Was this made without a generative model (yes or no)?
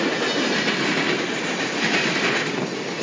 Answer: yes